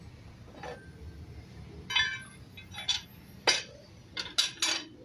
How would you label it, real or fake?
real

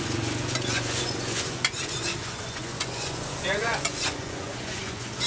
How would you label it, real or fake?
fake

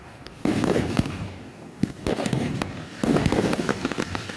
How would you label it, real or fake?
fake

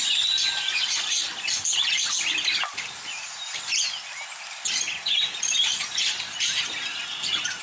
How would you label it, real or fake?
real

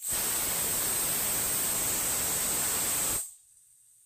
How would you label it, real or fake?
real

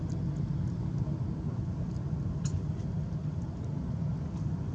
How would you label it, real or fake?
real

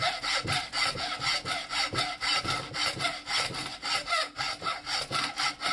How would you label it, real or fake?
real